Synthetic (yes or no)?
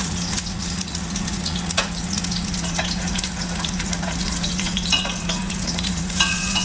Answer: yes